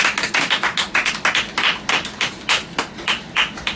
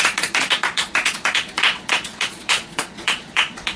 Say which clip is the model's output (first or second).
second